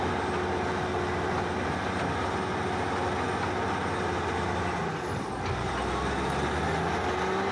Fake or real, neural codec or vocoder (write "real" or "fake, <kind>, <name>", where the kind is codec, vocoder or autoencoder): real